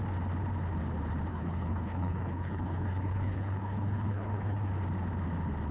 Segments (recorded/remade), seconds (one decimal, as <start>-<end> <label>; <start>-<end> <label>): 0.0-1.3 recorded; 1.3-4.7 remade; 4.7-5.7 recorded